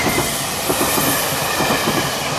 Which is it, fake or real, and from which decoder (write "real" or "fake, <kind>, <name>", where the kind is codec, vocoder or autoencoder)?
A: real